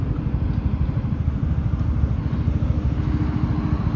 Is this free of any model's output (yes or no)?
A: yes